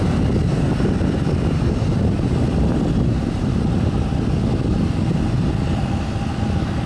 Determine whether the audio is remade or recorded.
recorded